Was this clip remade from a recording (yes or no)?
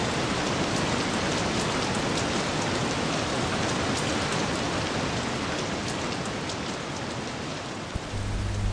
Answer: no